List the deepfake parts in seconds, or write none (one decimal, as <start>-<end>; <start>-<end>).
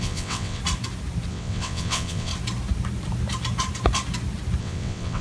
0.0-0.6; 1.3-2.3; 4.6-5.2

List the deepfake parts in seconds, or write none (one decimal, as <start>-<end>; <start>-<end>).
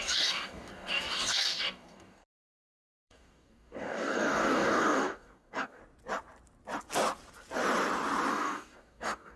0.0-5.8; 8.3-9.4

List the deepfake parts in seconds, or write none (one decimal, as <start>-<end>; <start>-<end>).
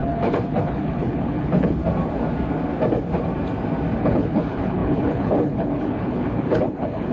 0.0-1.8; 4.0-7.1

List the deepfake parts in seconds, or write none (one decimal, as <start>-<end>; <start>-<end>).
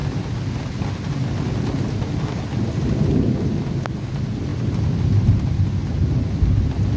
none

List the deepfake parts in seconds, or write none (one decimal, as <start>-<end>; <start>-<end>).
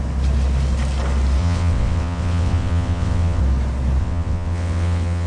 1.4-3.4; 4.0-5.3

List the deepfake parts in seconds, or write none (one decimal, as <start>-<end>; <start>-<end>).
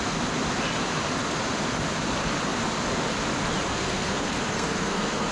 3.7-5.3